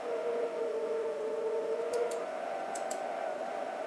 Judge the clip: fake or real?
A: fake